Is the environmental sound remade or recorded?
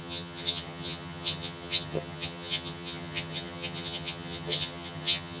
remade